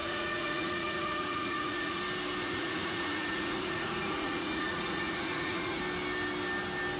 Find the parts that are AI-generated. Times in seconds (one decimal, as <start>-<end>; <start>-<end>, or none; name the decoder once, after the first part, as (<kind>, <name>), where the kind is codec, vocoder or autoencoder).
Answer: 0.0-2.0 (vocoder, Vocos); 2.4-5.8